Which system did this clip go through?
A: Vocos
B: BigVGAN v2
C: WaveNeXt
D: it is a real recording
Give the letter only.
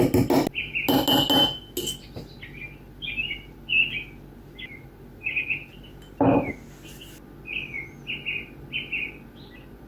D